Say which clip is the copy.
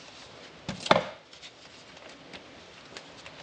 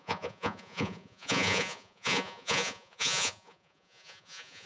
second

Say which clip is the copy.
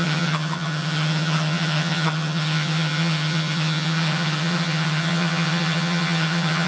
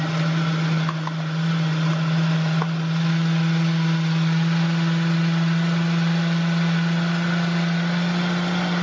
first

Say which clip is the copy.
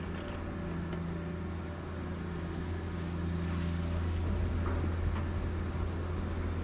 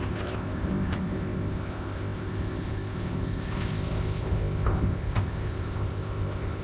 second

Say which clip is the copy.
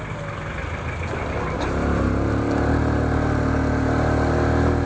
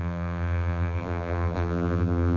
second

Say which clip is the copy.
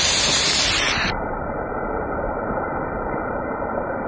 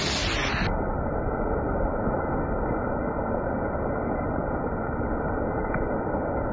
first